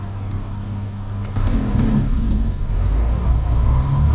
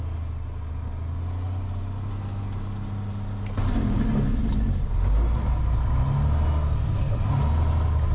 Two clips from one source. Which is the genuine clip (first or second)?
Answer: second